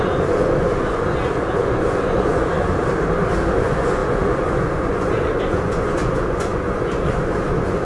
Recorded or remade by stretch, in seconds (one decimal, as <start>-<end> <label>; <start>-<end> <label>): 0.0-2.8 remade; 2.8-3.6 recorded; 3.6-7.8 remade